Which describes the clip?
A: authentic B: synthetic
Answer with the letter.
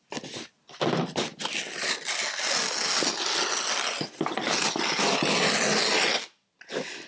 A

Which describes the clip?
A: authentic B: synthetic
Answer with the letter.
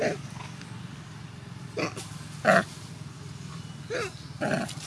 A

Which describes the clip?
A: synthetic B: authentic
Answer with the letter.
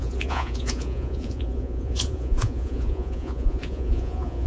A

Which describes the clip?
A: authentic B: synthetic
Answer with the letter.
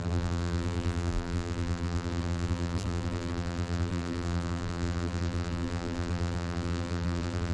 B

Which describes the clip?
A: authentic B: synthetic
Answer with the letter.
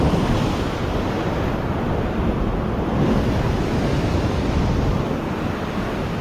A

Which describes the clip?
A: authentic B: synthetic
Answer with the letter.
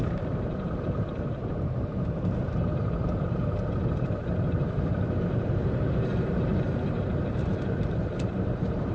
B